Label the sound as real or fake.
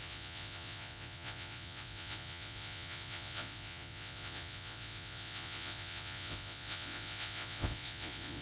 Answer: fake